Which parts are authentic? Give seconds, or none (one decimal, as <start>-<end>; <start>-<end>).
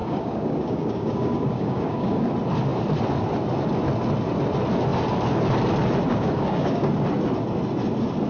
2.2-6.1; 6.9-8.3